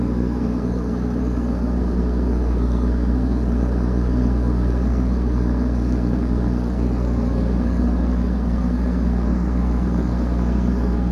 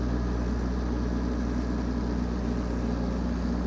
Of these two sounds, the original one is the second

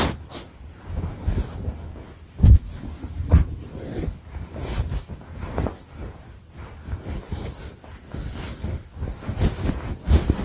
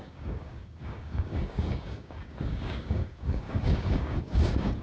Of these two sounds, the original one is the first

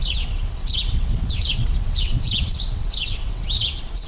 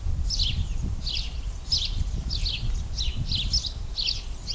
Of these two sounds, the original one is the second